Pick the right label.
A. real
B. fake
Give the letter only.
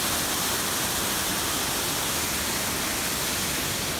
A